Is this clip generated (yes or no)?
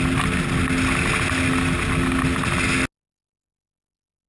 no